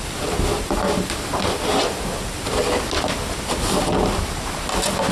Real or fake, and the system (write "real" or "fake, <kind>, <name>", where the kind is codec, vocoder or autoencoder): real